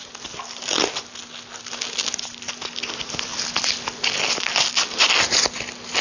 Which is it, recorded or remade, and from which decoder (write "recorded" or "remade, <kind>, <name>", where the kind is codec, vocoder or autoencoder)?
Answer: recorded